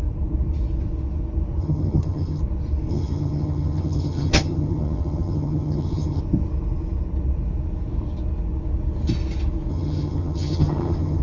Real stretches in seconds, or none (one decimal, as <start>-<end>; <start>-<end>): 0.0-1.6; 2.4-2.9; 6.2-9.7